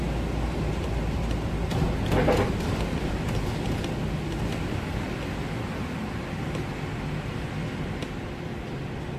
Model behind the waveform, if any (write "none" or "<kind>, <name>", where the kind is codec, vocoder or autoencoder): none